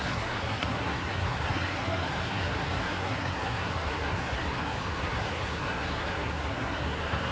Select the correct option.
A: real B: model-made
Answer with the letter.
B